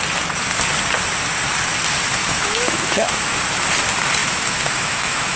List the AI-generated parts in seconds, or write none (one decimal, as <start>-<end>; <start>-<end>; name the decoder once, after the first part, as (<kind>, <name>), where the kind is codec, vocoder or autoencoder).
2.2-3.4 (autoencoder, DAC-VAE); 4.2-5.4